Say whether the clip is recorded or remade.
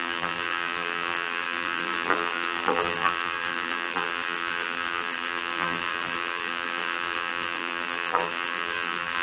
remade